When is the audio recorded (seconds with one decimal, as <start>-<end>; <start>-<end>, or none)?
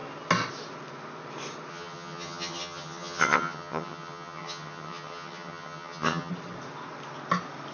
0.0-1.7; 6.3-7.7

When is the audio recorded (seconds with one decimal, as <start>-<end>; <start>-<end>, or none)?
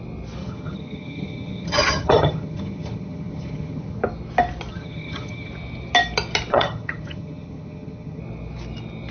0.0-0.4; 4.0-4.7; 5.5-6.5; 8.2-9.1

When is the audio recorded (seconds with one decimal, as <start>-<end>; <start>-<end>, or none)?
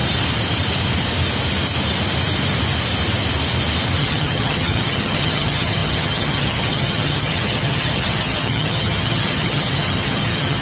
0.0-4.0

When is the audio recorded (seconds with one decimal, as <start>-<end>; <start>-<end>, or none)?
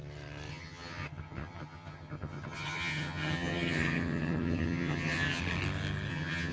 0.0-0.5; 5.4-6.1